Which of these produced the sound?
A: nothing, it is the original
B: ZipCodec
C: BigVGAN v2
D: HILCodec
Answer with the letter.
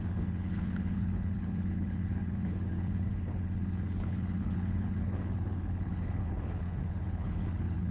D